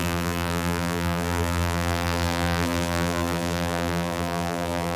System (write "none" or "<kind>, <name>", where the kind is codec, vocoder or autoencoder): vocoder, BigVGAN v2